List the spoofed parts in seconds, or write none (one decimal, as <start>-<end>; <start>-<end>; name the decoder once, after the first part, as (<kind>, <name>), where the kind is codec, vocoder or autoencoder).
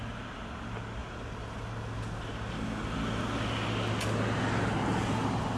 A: none